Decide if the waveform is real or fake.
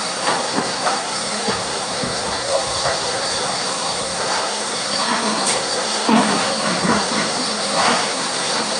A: fake